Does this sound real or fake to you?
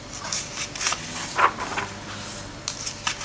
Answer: real